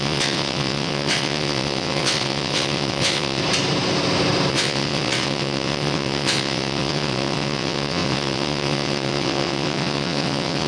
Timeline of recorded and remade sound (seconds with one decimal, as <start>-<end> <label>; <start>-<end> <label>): 0.0-3.4 remade; 3.4-4.5 recorded; 4.5-10.7 remade